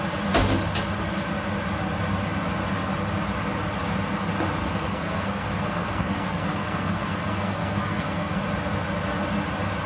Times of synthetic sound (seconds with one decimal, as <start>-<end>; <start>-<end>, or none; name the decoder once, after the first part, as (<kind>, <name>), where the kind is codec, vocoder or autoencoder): 4.6-8.4 (codec, SNAC)